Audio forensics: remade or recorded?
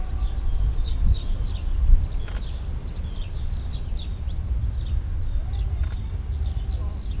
recorded